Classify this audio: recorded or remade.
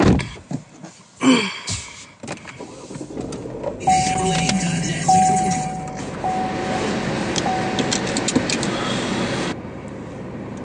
recorded